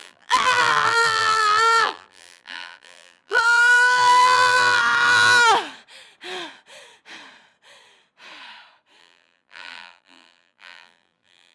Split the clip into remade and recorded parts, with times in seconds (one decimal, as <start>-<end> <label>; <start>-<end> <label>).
0.0-4.8 remade; 4.8-9.0 recorded; 9.0-11.5 remade